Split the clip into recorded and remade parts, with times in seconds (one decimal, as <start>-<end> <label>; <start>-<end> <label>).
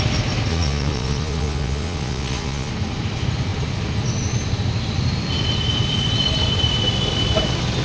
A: 0.0-0.5 recorded; 0.5-2.7 remade; 2.7-7.8 recorded